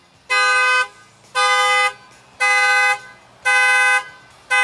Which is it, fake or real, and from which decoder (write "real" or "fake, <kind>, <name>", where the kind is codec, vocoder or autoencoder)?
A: real